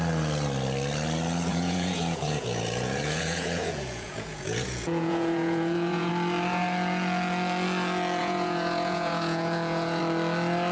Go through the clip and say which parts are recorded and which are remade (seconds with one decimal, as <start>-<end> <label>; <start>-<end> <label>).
0.0-1.5 recorded; 1.5-6.1 remade; 6.1-8.2 recorded; 8.2-10.0 remade; 10.0-10.7 recorded